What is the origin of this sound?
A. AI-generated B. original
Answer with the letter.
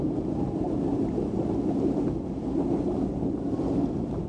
B